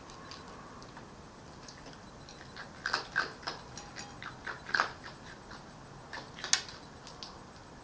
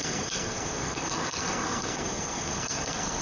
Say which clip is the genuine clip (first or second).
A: first